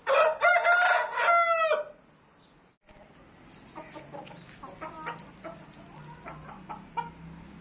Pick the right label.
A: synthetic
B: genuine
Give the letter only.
B